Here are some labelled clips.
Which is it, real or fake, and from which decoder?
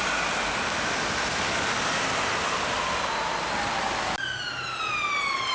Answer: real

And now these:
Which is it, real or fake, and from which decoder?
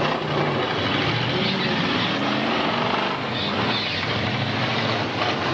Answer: real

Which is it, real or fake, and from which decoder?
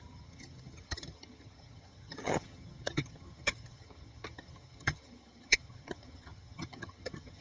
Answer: fake, vocoder, HiFi-GAN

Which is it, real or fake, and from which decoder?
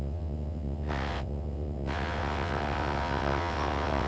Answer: fake, vocoder, WaveNeXt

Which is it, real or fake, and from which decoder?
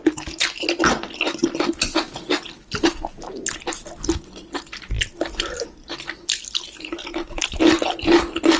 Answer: real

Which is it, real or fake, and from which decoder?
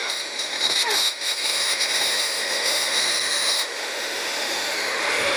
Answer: fake, autoencoder, DAC-VAE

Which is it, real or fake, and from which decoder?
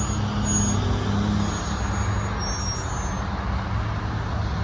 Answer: real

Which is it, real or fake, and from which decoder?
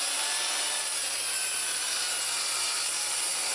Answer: real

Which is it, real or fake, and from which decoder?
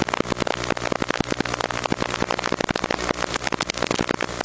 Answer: real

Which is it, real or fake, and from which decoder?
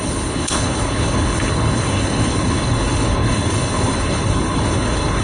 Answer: fake, codec, HILCodec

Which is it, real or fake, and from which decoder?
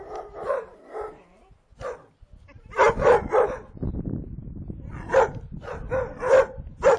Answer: real